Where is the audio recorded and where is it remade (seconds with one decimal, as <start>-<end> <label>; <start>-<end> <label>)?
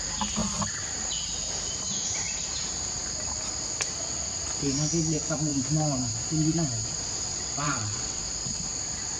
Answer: 0.0-7.3 recorded; 7.3-8.2 remade; 8.2-9.2 recorded